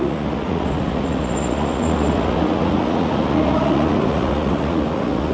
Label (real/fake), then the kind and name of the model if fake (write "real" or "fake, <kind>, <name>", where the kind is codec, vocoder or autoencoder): fake, vocoder, Vocos